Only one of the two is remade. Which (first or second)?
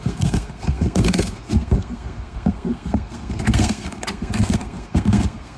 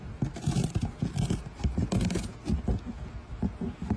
first